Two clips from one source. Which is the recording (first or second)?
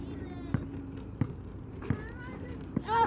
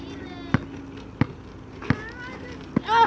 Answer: second